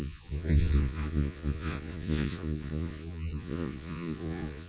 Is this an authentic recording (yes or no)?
no